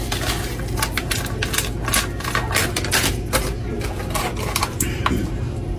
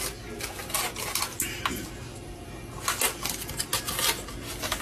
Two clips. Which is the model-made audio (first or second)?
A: first